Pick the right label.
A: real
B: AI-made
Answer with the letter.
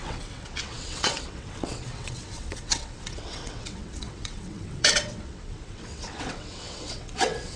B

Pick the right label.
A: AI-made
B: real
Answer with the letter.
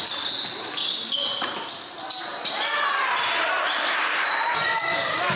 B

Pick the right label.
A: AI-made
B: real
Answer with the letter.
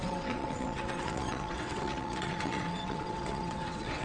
A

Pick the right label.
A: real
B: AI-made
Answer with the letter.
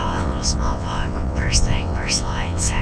B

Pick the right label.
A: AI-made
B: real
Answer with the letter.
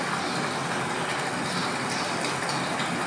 B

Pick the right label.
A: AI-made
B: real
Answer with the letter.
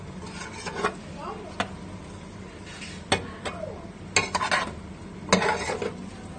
B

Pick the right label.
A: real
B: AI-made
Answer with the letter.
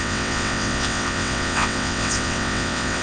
B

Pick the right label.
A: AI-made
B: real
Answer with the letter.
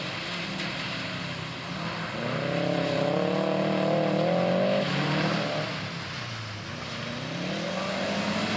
B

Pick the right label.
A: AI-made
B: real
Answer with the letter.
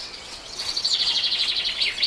A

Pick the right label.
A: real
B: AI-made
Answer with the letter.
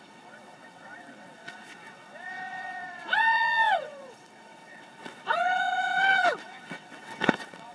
B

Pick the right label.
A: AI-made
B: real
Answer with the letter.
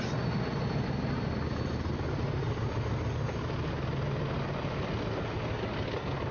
B